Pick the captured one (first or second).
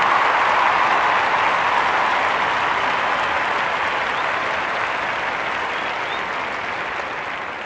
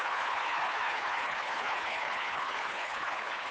first